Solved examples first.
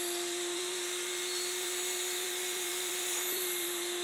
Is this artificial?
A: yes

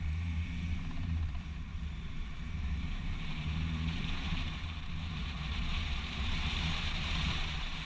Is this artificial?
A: yes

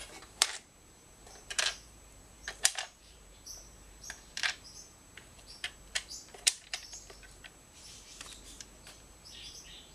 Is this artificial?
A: yes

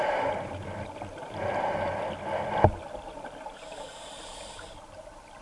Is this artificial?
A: no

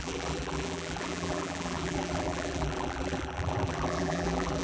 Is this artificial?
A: yes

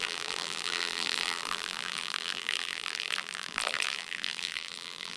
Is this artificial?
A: yes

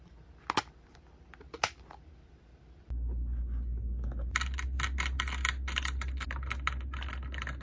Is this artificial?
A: no